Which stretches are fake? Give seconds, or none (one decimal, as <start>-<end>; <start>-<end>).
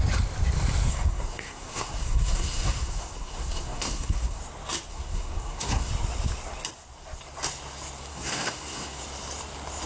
0.9-4.4; 4.9-5.9; 8.1-9.0